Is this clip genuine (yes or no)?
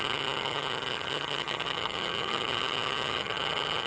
no